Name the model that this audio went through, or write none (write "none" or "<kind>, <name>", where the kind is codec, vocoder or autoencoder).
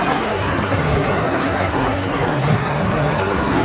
codec, SNAC